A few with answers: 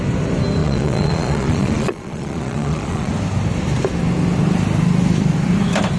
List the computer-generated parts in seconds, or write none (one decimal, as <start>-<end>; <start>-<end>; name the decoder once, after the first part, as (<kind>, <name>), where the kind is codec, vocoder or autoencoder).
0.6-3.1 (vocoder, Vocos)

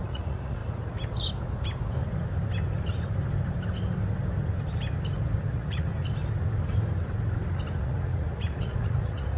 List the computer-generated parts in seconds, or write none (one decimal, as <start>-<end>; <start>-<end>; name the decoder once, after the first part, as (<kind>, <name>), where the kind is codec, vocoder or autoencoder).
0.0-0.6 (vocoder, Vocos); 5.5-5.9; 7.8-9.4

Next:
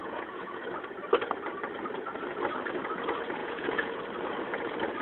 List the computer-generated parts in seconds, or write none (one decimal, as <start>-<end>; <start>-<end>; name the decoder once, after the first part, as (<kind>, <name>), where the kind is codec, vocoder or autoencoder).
0.0-0.6 (vocoder, Vocos); 3.4-4.0

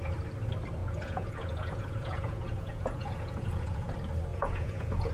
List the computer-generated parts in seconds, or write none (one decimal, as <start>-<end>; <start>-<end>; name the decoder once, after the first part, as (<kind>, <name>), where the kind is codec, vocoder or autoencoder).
0.8-3.9 (vocoder, Vocos); 4.3-5.1